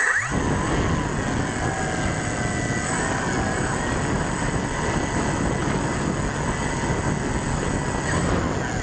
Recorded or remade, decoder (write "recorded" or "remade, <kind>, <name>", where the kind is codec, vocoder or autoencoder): recorded